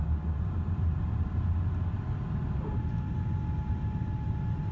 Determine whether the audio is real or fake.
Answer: real